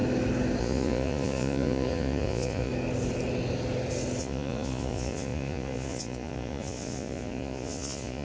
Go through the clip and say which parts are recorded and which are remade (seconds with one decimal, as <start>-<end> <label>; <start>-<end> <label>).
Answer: 0.0-0.6 recorded; 0.6-2.7 remade; 2.7-4.2 recorded; 4.2-8.2 remade